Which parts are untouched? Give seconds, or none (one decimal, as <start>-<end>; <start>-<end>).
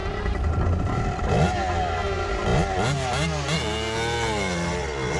0.0-5.2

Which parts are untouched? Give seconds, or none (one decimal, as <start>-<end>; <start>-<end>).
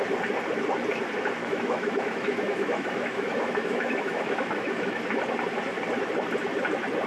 0.0-1.4; 5.0-7.1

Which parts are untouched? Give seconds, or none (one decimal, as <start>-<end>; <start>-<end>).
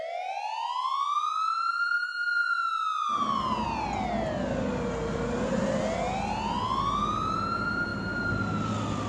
0.0-9.1